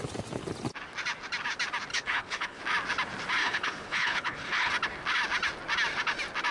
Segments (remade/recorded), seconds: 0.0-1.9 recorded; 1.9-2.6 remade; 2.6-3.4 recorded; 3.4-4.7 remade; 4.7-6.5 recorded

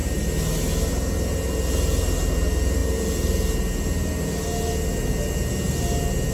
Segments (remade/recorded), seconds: 0.0-6.3 recorded

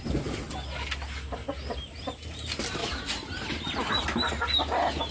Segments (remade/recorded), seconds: 0.0-5.1 recorded

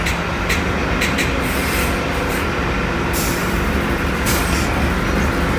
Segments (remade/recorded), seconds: 0.0-1.6 recorded; 1.6-4.3 remade; 4.3-5.6 recorded

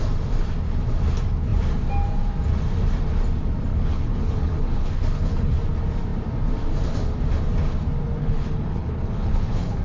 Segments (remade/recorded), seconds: 0.0-3.7 recorded; 3.7-5.6 remade; 5.6-8.2 recorded; 8.2-9.8 remade

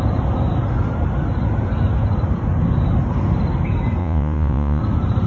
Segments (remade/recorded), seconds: 0.0-4.0 recorded; 4.0-4.8 remade; 4.8-5.3 recorded

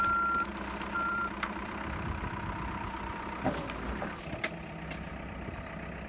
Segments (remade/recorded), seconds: 0.0-0.5 recorded; 0.5-4.2 remade; 4.2-6.1 recorded